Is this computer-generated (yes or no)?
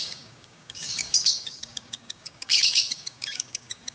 yes